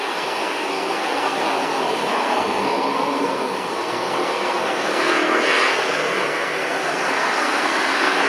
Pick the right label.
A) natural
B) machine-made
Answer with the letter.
B